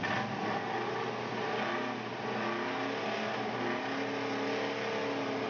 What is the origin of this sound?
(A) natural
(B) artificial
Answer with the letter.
A